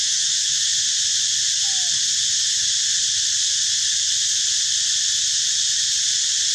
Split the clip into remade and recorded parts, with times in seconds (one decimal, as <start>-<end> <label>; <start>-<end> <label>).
0.0-0.6 remade; 0.6-6.5 recorded